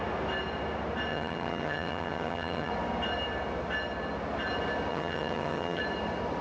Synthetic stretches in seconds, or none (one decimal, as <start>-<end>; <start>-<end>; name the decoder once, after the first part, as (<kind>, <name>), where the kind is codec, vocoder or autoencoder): 1.1-2.7 (vocoder, HiFi-GAN); 4.9-5.8

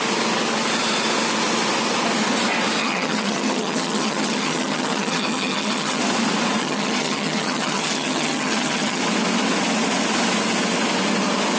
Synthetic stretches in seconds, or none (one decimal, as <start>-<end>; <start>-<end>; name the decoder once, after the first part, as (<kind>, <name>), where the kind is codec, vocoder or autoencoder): 2.8-6.0 (vocoder, HiFi-GAN); 6.6-9.0

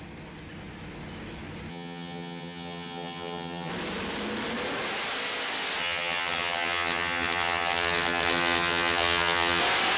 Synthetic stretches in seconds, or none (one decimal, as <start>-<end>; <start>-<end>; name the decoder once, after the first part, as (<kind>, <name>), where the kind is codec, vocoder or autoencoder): 1.7-3.7 (vocoder, HiFi-GAN); 5.8-9.6

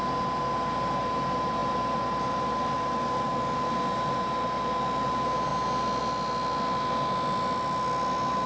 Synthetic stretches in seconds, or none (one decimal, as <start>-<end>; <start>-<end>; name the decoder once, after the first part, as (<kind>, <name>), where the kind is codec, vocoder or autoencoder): none